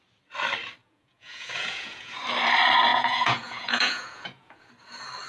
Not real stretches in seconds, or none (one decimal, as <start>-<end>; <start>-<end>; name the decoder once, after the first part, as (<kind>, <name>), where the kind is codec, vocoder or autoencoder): 0.8-2.1 (vocoder, Vocos); 2.9-4.7